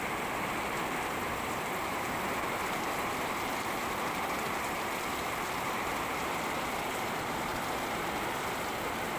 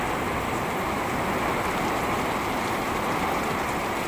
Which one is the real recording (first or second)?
second